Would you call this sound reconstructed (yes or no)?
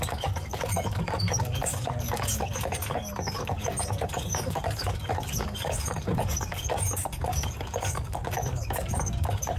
yes